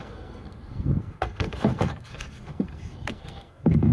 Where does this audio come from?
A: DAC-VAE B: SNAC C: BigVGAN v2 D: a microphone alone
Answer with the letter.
B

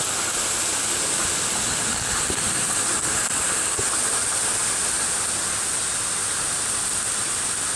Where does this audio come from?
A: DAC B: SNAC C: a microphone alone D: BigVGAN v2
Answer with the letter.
C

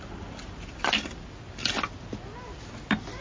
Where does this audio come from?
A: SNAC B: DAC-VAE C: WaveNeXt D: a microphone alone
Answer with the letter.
D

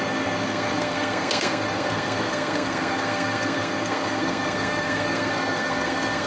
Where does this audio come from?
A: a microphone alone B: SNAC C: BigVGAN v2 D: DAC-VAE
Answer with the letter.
B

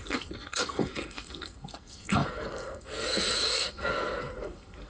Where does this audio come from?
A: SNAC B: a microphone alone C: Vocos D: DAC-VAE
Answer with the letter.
A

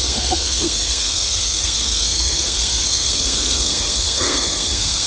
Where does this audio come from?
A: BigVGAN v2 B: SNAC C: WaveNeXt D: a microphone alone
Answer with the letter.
B